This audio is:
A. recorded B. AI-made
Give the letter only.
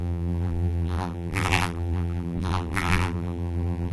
B